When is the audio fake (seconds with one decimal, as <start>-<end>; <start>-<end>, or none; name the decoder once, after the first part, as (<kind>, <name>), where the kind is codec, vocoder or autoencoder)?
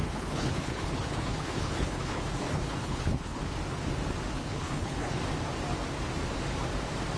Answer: 0.0-3.4 (codec, HILCodec); 4.4-5.2